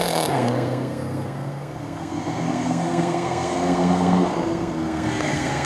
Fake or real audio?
fake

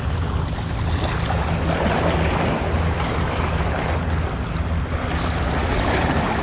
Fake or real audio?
real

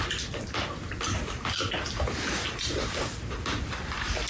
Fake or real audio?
real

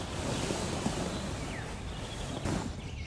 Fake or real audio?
real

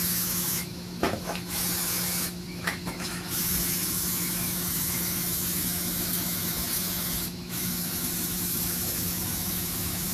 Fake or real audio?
fake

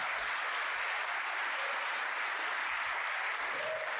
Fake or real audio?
real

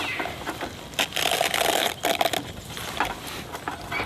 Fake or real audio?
real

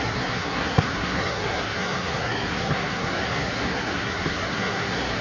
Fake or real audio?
fake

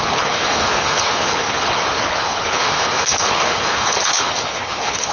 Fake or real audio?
fake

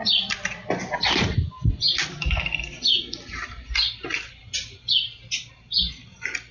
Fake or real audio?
real